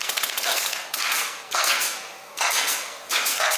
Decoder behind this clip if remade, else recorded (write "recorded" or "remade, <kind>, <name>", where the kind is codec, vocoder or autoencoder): remade, codec, SNAC